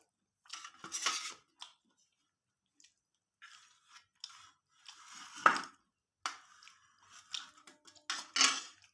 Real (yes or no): yes